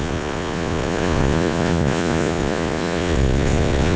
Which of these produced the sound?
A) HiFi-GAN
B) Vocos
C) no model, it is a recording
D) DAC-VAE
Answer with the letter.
B